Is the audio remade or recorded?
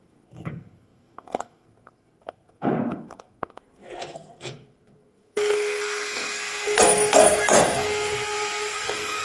remade